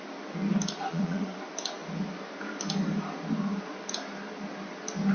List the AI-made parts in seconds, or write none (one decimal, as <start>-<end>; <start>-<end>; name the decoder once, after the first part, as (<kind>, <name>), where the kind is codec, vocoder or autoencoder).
0.9-1.4 (vocoder, Vocos)